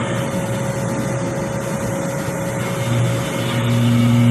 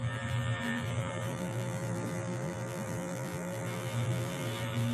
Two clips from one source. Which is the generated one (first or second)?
second